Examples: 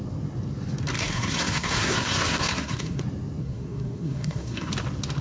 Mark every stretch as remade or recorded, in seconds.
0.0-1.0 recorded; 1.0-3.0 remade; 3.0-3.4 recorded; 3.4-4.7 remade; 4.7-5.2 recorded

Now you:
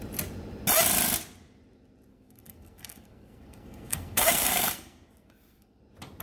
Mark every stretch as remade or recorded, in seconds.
0.0-2.1 recorded; 2.1-5.8 remade; 5.8-6.2 recorded

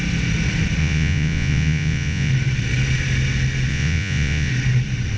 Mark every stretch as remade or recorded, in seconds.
0.0-0.8 recorded; 0.8-2.3 remade; 2.3-3.7 recorded; 3.7-4.5 remade; 4.5-5.2 recorded

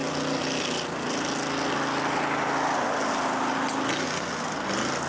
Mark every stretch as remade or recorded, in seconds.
0.0-5.1 recorded

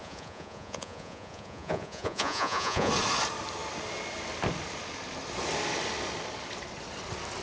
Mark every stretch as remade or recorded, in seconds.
0.0-2.9 remade; 2.9-7.4 recorded

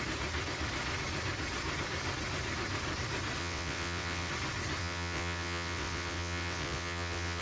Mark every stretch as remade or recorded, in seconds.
0.0-3.4 recorded; 3.4-4.3 remade; 4.3-4.8 recorded; 4.8-7.4 remade

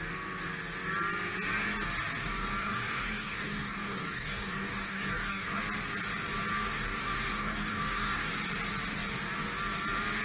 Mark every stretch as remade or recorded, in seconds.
0.0-2.5 recorded; 2.5-5.6 remade; 5.6-6.5 recorded; 6.5-8.3 remade; 8.3-10.2 recorded